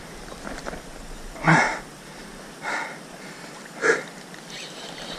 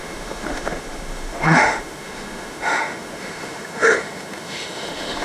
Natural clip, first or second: first